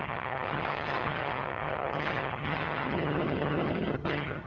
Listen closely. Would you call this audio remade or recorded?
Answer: remade